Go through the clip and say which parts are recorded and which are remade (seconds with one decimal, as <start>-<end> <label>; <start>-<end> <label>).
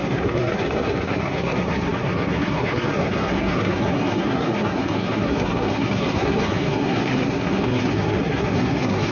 0.0-9.1 remade